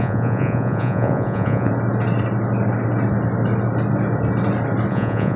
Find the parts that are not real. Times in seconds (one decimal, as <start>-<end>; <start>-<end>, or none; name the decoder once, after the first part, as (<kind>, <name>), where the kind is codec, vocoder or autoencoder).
0.0-1.7 (vocoder, Vocos); 4.9-5.4